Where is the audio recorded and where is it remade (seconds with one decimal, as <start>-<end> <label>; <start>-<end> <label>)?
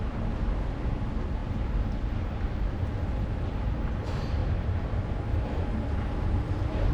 0.0-6.9 recorded